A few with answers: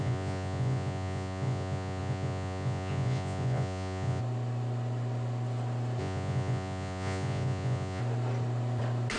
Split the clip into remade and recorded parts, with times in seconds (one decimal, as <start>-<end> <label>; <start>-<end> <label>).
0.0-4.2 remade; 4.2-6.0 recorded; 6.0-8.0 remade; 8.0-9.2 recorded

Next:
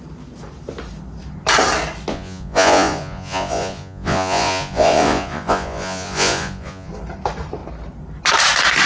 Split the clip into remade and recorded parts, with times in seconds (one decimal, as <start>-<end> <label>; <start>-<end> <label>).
0.0-2.1 recorded; 2.1-6.9 remade; 6.9-8.9 recorded

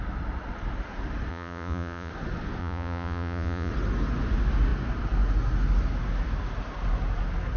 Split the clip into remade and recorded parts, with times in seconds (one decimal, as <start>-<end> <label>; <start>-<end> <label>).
0.0-1.3 recorded; 1.3-2.1 remade; 2.1-2.6 recorded; 2.6-3.7 remade; 3.7-7.6 recorded